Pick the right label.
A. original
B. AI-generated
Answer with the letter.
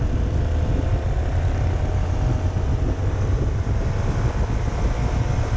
A